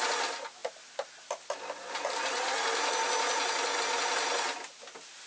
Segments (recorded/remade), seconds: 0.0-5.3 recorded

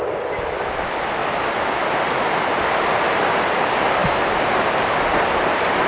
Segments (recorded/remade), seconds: 0.0-4.0 remade; 4.0-4.8 recorded; 4.8-5.9 remade

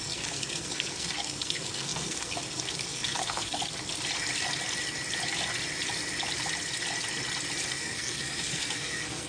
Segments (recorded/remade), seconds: 0.0-3.6 remade; 3.6-7.7 recorded; 7.7-9.3 remade

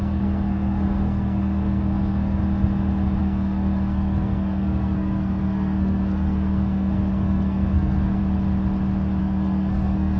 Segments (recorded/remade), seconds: 0.0-2.4 remade; 2.4-3.2 recorded; 3.2-8.2 remade; 8.2-9.2 recorded; 9.2-10.2 remade

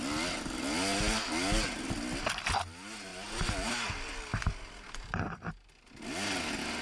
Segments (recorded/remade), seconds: 0.0-6.8 recorded

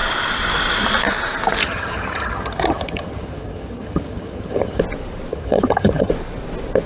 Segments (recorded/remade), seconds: 0.0-1.6 recorded; 1.6-4.8 remade; 4.8-5.3 recorded; 5.3-6.1 remade; 6.1-6.9 recorded

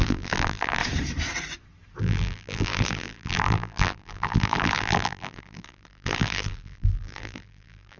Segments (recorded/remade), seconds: 0.0-0.8 remade; 0.8-2.0 recorded; 2.0-8.0 remade